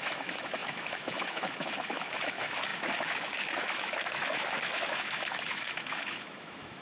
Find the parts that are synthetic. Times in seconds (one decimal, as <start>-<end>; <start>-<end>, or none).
0.0-6.8